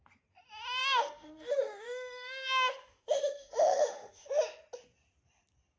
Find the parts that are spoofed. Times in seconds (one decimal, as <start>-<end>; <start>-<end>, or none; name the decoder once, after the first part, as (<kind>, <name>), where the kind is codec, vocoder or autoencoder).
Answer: 0.8-4.3 (autoencoder, DAC-VAE)